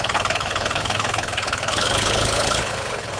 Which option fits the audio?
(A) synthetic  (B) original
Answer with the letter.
A